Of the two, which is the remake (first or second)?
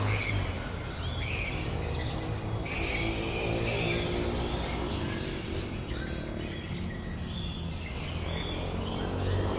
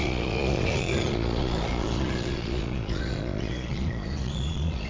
second